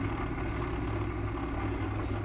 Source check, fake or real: real